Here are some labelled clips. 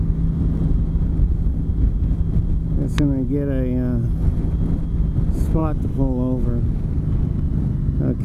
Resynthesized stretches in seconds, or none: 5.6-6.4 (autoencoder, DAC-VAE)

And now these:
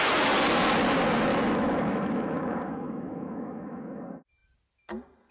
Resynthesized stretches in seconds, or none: 1.3-4.0 (autoencoder, DAC-VAE)

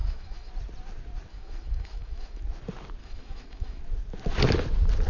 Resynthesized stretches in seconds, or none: 0.0-0.5 (autoencoder, DAC-VAE); 1.3-2.4; 3.0-3.8

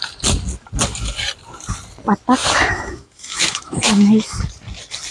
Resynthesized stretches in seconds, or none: 2.4-4.4 (autoencoder, DAC-VAE)

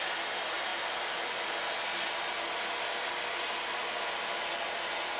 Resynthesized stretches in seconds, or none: none

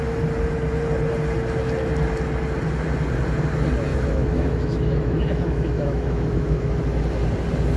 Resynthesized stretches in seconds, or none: 3.9-6.7 (autoencoder, DAC-VAE)

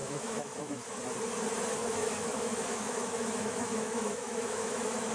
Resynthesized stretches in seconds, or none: 0.0-1.0 (autoencoder, DAC-VAE); 1.8-5.1

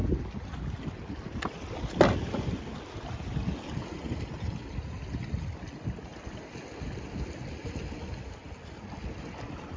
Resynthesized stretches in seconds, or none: none